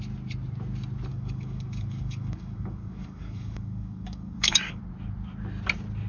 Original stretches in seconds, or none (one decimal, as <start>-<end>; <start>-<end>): 0.0-1.1; 4.8-6.1